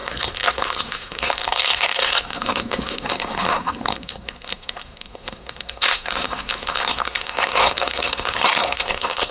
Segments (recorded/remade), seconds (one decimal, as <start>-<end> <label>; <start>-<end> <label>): 0.0-9.3 remade